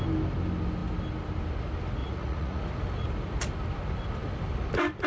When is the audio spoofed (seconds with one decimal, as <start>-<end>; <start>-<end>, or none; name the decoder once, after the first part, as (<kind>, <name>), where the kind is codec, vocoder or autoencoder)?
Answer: 2.0-2.6 (vocoder, Vocos)